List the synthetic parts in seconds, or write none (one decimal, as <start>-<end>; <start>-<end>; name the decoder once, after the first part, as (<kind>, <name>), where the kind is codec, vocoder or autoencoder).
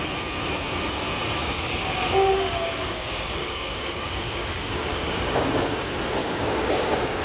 1.4-5.4 (codec, DAC); 6.2-7.2